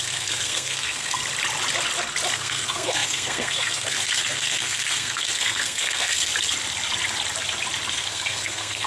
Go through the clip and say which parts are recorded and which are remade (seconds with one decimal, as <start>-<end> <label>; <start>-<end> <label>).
0.0-1.2 remade; 1.2-2.3 recorded; 2.3-6.3 remade; 6.3-7.9 recorded; 7.9-8.9 remade